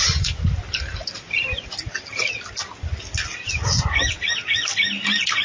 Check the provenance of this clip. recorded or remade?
recorded